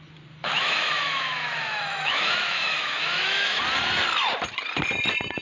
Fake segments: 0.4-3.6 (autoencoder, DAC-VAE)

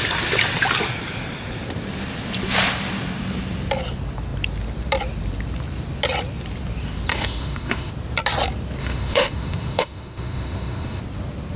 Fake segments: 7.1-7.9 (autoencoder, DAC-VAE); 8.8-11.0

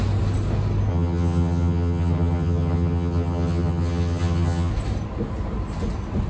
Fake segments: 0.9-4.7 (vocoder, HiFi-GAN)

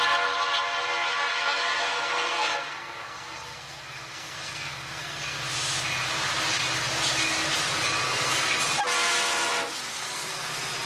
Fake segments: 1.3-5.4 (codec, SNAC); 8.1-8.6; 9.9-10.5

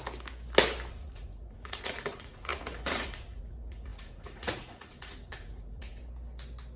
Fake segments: 0.9-6.0 (vocoder, Vocos)

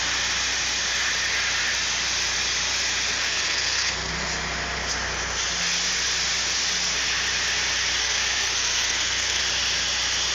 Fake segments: 3.1-4.1 (codec, SNAC); 8.0-9.4

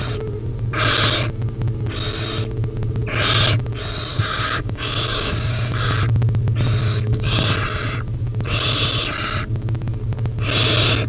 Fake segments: 4.1-6.0 (codec, DAC); 6.8-7.4